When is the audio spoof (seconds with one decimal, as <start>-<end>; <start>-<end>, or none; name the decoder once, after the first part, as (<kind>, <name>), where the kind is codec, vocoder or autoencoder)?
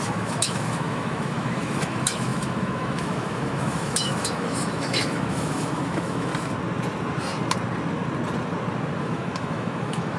0.0-6.3 (autoencoder, DAC-VAE); 9.0-10.2